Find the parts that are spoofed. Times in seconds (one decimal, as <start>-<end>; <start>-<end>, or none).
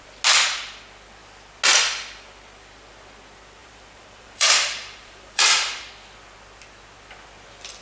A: 3.6-5.9